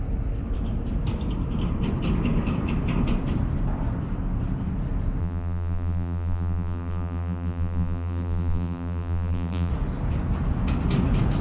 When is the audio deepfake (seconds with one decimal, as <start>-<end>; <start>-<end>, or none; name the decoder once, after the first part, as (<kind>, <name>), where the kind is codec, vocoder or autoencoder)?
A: 5.2-9.7 (vocoder, BigVGAN v2)